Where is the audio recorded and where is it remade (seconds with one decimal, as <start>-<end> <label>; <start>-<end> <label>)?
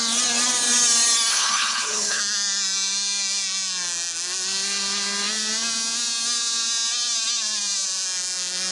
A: 0.0-1.3 recorded; 1.3-2.2 remade; 2.2-8.7 recorded